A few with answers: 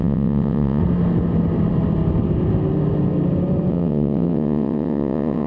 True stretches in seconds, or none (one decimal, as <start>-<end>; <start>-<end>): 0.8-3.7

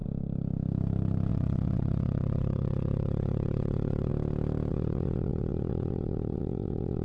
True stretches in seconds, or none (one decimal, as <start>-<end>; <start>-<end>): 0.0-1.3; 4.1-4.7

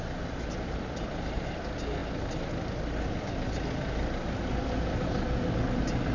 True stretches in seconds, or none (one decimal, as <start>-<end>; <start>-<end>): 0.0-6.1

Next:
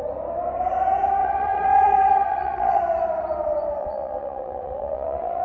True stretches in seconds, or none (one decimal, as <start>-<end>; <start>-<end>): 0.0-1.2; 2.8-3.8